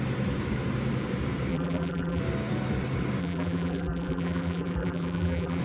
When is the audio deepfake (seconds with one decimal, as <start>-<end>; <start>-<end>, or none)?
1.5-2.2; 3.2-5.6